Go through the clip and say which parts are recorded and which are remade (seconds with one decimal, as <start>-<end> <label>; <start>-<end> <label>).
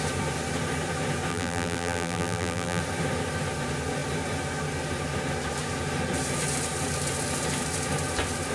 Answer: 0.0-1.3 recorded; 1.3-2.8 remade; 2.8-8.5 recorded